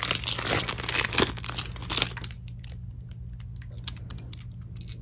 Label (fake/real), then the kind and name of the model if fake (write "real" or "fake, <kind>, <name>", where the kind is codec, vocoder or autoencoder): real